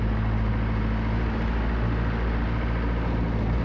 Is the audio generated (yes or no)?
no